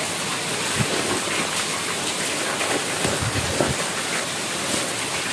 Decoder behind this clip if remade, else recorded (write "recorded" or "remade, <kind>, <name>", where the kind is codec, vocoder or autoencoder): recorded